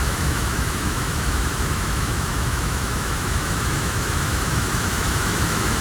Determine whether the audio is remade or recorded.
remade